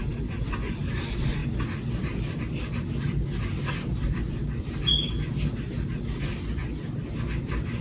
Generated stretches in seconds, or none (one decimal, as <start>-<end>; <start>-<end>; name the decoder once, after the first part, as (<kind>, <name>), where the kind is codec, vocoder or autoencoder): none